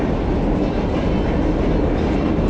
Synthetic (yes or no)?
no